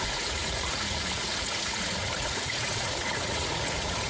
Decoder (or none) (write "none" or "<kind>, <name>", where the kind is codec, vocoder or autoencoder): vocoder, Vocos